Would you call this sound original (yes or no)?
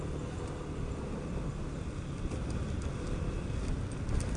yes